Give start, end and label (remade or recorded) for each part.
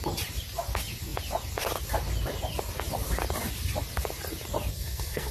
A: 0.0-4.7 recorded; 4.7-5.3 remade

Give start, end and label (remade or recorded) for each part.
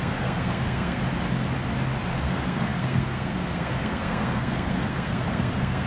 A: 0.0-1.0 remade; 1.0-2.1 recorded; 2.1-5.9 remade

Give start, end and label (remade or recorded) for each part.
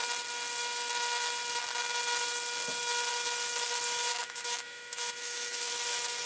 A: 0.0-4.1 recorded; 4.1-5.7 remade; 5.7-6.3 recorded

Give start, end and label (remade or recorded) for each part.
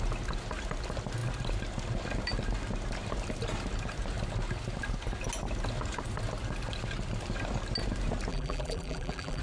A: 0.0-8.3 recorded; 8.3-9.4 remade